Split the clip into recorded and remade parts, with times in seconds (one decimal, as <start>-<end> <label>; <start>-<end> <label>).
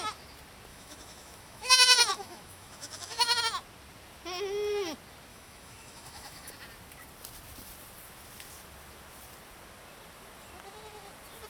0.0-0.7 recorded; 0.7-3.4 remade; 3.4-5.3 recorded; 5.3-6.5 remade; 6.5-11.5 recorded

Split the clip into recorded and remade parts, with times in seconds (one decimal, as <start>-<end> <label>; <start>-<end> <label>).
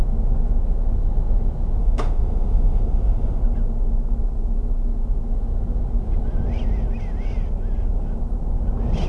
0.0-1.8 recorded; 1.8-3.4 remade; 3.4-9.1 recorded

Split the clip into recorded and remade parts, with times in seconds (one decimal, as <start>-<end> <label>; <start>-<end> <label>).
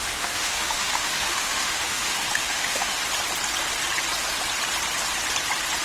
0.0-3.0 remade; 3.0-5.8 recorded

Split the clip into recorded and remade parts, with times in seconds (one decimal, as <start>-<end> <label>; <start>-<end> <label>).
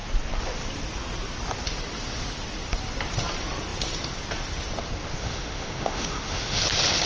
0.0-5.2 recorded; 5.2-6.6 remade; 6.6-7.1 recorded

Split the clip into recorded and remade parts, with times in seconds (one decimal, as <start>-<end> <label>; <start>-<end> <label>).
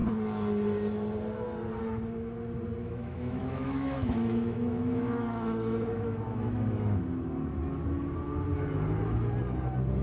0.0-2.8 recorded; 2.8-7.0 remade; 7.0-10.0 recorded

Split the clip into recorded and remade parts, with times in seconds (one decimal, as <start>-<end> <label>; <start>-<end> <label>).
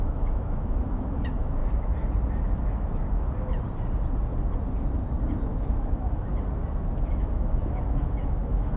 0.0-1.6 remade; 1.6-5.6 recorded; 5.6-6.3 remade; 6.3-7.1 recorded; 7.1-8.8 remade